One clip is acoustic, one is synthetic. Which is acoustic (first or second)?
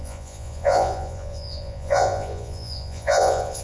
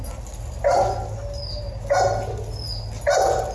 second